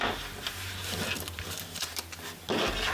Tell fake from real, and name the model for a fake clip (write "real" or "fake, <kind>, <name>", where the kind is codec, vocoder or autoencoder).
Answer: real